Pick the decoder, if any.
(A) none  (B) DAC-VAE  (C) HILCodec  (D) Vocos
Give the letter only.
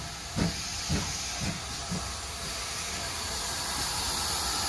A